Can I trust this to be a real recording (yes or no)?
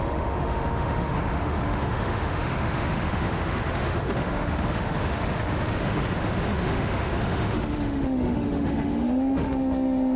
no